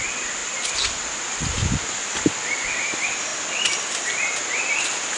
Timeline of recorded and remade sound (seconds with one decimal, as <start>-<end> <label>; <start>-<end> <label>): 0.0-5.2 recorded